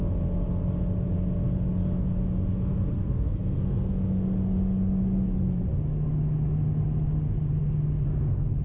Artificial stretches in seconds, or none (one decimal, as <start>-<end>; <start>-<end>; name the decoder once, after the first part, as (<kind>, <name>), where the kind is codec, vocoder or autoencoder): 2.9-3.9 (codec, SNAC)